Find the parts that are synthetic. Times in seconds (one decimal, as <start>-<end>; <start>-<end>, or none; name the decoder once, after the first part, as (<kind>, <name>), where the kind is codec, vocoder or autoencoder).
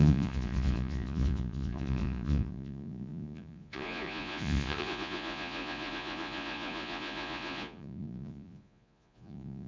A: 0.0-9.7 (vocoder, Vocos)